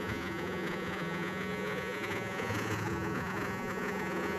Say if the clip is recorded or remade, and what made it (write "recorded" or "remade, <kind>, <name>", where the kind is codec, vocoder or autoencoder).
remade, vocoder, Vocos